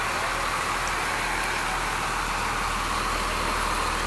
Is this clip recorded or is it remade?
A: recorded